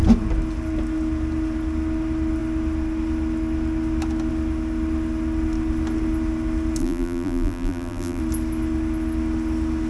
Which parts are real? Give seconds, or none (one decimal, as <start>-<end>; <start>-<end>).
0.0-6.8; 8.2-9.9